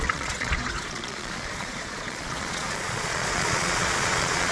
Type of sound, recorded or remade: remade